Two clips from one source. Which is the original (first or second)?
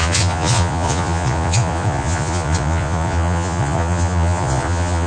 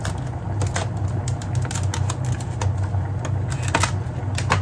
second